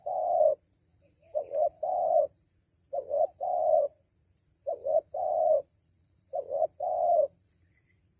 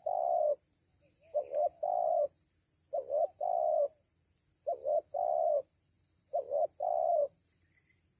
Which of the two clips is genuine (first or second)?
second